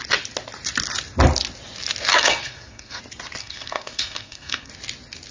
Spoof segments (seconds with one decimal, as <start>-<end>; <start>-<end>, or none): 2.1-3.0; 3.4-4.7